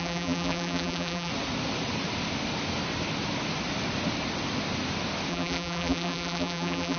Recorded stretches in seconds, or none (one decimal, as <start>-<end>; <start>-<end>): 1.3-5.3